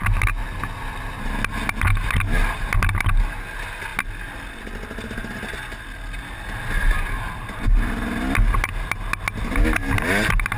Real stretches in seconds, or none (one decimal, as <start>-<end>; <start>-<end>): 0.0-10.6